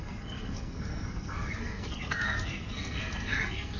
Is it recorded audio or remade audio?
remade